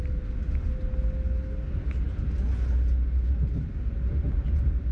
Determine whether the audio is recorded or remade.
recorded